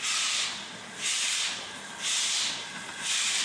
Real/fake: fake